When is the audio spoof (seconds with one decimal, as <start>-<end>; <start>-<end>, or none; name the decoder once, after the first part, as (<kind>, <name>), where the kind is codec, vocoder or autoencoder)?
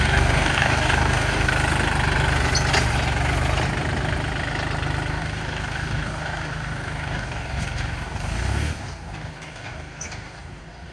0.0-1.5 (codec, DAC); 5.1-10.9